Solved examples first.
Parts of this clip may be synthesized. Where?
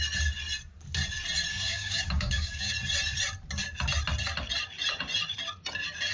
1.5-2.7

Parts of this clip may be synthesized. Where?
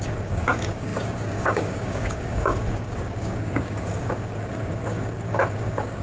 0.0-6.0